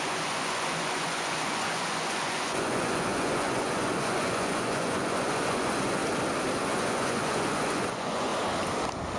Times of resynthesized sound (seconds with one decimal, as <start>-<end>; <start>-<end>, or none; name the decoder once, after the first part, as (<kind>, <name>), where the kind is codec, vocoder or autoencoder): 0.0-6.0 (vocoder, Vocos); 6.6-8.3